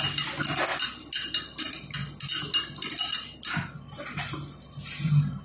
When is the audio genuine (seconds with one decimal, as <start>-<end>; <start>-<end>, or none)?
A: 0.0-5.4